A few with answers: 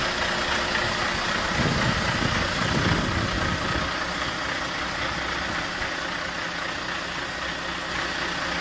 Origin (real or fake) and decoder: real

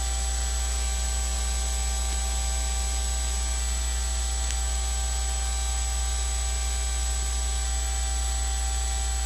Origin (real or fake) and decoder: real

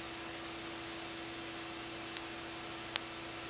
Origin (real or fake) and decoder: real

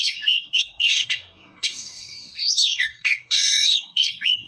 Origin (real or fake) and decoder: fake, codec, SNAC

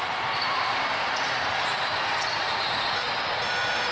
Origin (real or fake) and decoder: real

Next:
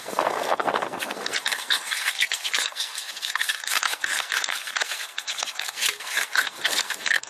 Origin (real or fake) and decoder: fake, codec, SNAC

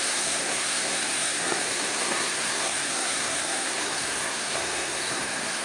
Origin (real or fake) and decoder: fake, codec, SNAC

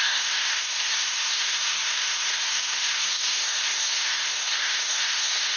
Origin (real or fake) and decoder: fake, codec, SNAC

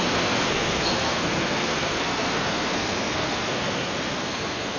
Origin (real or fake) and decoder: fake, codec, SNAC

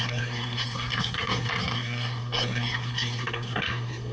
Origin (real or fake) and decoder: fake, codec, SNAC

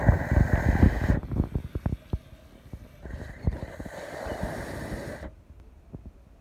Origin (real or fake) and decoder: real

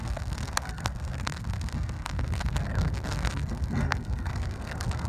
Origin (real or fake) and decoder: fake, codec, SNAC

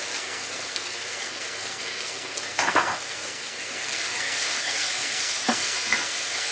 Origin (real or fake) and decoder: fake, codec, SNAC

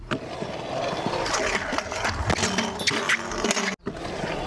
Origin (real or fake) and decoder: real